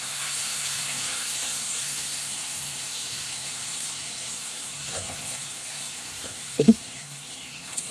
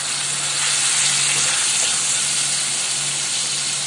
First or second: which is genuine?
second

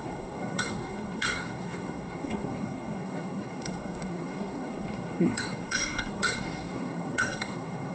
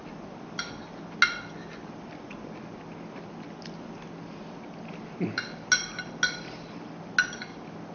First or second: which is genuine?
second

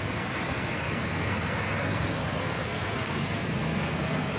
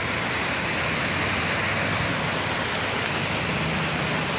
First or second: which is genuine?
second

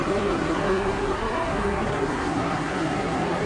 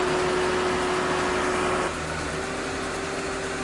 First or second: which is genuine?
second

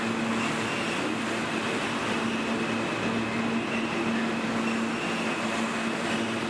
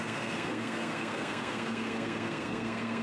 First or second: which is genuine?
first